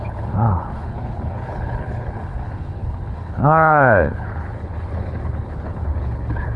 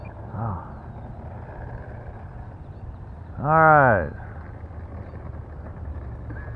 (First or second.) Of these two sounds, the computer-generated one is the first